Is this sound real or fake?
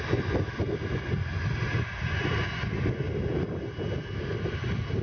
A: real